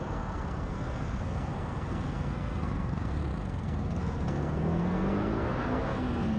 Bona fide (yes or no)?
no